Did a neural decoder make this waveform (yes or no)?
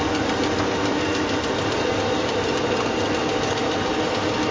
no